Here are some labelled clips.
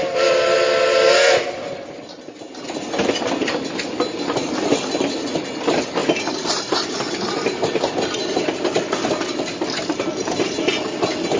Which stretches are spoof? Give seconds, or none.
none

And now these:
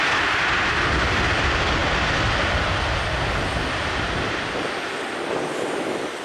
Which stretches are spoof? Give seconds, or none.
none